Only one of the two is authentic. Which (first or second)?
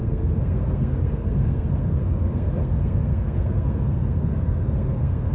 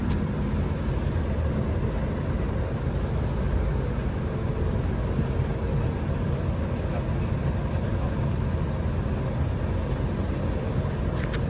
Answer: second